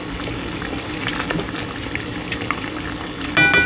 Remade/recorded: recorded